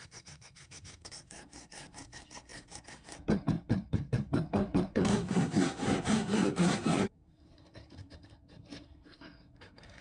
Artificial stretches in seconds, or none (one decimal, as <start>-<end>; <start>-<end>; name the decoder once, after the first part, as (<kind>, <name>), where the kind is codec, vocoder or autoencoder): 0.0-10.0 (codec, SNAC)